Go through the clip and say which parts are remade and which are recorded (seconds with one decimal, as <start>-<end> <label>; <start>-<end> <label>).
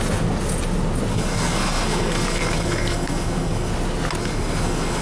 0.0-1.1 recorded; 1.1-3.7 remade; 3.7-4.2 recorded; 4.2-5.0 remade